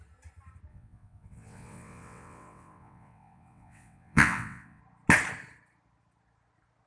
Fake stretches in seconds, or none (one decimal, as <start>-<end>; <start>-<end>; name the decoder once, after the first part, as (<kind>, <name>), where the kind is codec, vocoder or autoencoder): 0.7-4.8 (vocoder, WaveNeXt)